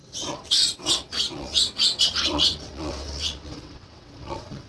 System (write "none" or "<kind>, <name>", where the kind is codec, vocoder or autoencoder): vocoder, WaveNeXt